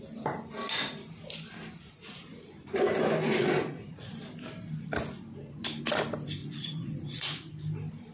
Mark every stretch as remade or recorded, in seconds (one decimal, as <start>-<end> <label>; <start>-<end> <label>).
0.0-3.3 recorded; 3.3-4.1 remade; 4.1-6.4 recorded; 6.4-7.5 remade; 7.5-8.1 recorded